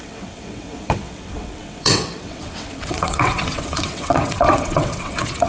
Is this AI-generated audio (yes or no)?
yes